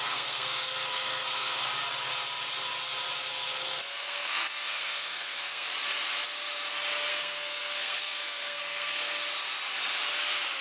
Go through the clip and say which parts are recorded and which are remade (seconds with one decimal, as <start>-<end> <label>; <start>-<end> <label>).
0.0-1.7 remade; 1.7-3.6 recorded; 3.6-5.7 remade; 5.7-7.1 recorded; 7.1-9.0 remade; 9.0-10.6 recorded